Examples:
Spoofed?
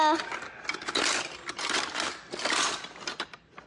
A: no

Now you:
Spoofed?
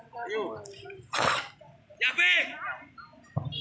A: no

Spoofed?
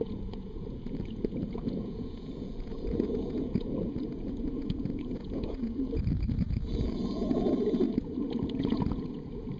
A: yes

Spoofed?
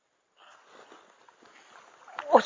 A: no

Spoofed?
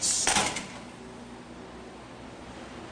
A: no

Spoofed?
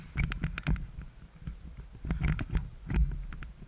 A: no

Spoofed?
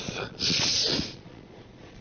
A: yes